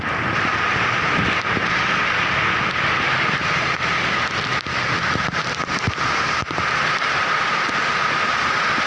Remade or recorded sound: recorded